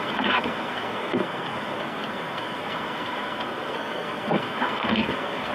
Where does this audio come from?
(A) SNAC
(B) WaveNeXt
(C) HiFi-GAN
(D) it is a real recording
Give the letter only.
A